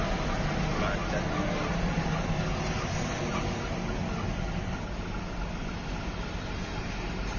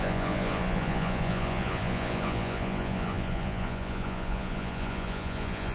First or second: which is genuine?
first